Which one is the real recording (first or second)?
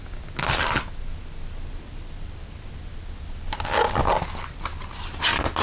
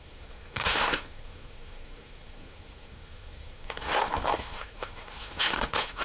first